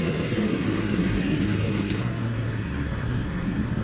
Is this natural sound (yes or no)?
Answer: no